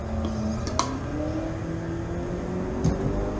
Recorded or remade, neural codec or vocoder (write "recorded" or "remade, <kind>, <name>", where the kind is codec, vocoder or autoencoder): recorded